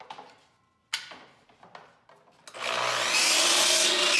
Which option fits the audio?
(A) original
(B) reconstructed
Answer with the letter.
A